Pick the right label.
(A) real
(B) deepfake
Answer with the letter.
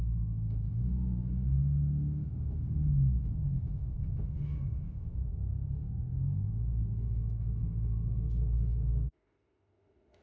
B